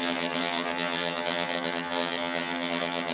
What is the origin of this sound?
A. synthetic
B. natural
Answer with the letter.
A